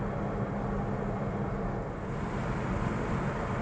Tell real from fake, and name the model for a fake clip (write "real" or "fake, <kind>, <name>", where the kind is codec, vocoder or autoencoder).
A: real